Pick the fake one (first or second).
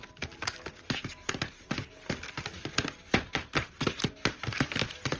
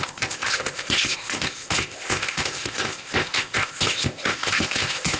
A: second